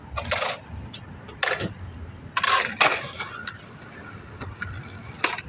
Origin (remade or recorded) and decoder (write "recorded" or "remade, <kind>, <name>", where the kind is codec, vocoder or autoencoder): recorded